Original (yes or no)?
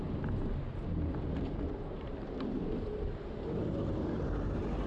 no